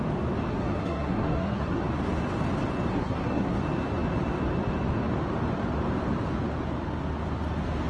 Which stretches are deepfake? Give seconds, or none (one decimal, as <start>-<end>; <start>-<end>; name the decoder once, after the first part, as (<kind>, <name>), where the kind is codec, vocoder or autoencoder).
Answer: 0.5-1.8 (codec, SNAC); 2.9-3.6